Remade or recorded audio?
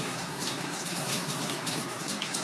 remade